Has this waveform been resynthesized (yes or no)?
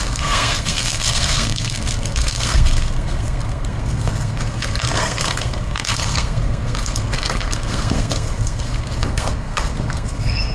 yes